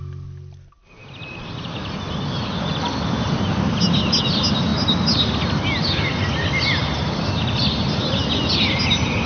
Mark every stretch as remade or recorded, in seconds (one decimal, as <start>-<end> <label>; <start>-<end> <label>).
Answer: 0.0-1.0 recorded; 1.0-1.9 remade; 1.9-4.7 recorded; 4.7-5.3 remade; 5.3-6.8 recorded; 6.8-8.1 remade; 8.1-9.3 recorded